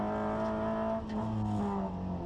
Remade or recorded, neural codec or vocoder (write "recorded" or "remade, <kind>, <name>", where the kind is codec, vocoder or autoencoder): recorded